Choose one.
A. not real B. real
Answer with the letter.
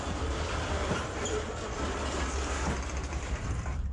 A